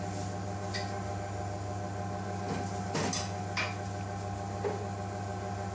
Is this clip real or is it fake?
real